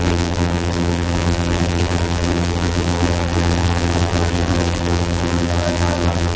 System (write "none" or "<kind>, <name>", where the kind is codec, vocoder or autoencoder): vocoder, BigVGAN v2